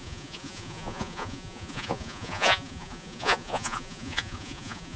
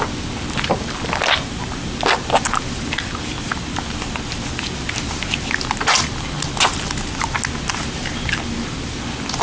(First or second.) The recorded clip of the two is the second